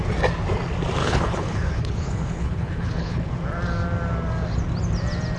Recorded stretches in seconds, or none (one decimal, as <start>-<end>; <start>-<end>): 0.0-1.0; 3.3-5.4